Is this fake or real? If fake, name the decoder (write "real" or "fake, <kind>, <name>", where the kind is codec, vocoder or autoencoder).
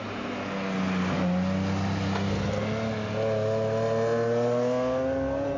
real